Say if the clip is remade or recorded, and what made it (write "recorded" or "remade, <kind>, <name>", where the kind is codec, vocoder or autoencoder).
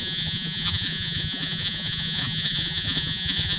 remade, vocoder, Vocos